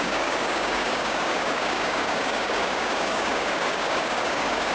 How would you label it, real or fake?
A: fake